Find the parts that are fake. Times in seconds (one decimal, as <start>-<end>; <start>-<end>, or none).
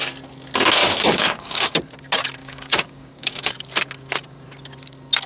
0.8-1.7; 2.4-3.5